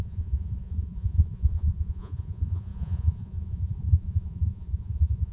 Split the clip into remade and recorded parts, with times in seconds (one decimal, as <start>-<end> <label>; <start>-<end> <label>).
0.0-5.3 remade